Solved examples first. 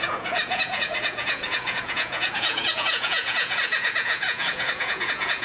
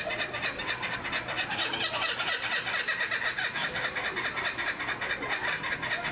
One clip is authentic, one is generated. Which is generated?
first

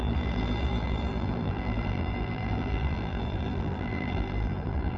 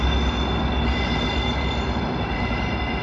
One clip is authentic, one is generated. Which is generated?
first